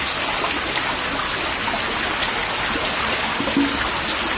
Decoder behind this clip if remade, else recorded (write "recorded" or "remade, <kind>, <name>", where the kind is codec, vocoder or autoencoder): recorded